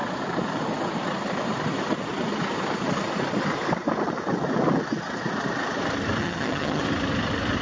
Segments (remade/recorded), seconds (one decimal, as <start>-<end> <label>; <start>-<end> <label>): 0.0-6.2 recorded; 6.2-6.8 remade; 6.8-7.6 recorded